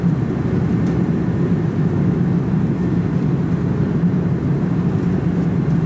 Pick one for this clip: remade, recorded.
recorded